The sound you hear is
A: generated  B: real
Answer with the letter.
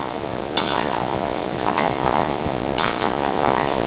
A